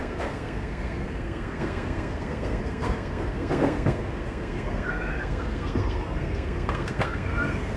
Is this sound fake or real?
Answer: fake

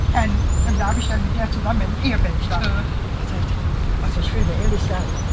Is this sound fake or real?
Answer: real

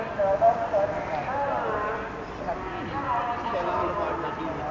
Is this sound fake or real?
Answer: real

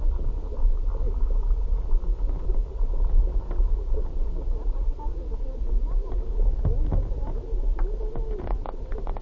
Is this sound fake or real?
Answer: real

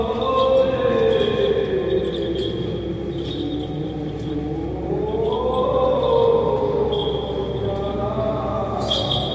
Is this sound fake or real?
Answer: real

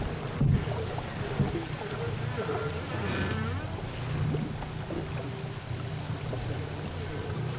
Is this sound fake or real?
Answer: real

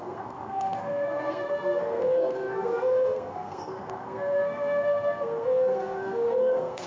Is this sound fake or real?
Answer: fake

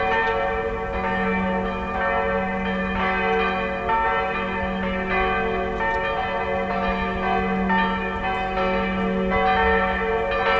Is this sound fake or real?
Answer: real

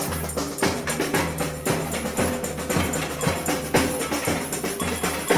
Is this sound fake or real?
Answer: real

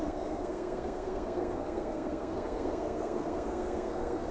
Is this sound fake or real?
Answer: fake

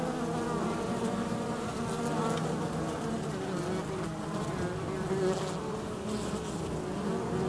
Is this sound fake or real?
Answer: real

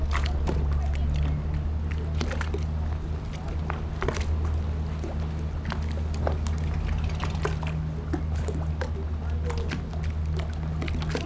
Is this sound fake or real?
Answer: real